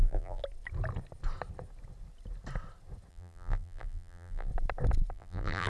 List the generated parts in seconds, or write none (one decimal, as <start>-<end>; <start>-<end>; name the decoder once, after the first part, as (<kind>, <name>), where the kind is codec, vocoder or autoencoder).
0.0-0.4 (vocoder, BigVGAN v2); 3.1-4.5; 5.1-5.7